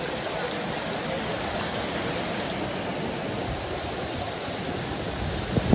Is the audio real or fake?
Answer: real